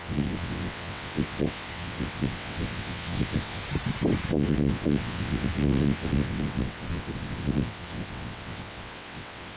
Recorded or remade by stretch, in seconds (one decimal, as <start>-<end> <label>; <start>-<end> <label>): 0.0-3.6 remade; 3.6-4.3 recorded; 4.3-9.6 remade